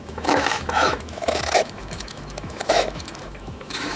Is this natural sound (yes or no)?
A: no